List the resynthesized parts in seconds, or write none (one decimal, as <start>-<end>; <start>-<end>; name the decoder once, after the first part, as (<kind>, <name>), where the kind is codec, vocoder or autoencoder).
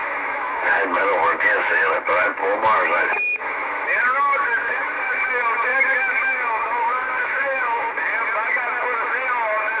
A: 0.0-1.9 (autoencoder, DAC-VAE); 2.4-5.3; 5.7-7.9